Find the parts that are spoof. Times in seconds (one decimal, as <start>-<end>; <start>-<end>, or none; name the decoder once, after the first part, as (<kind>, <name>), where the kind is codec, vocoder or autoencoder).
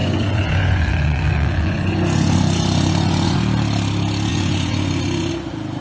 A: 0.0-3.4 (vocoder, Vocos); 4.3-5.3